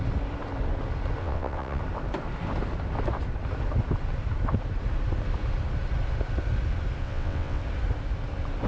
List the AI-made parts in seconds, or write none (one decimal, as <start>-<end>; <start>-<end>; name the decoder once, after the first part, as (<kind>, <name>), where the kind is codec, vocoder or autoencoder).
1.2-1.8 (vocoder, WaveNeXt); 7.0-7.6